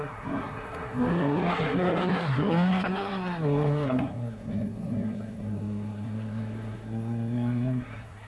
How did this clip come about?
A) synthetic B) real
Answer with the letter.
A